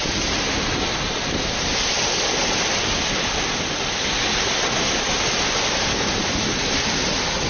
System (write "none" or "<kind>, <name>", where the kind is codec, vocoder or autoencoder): none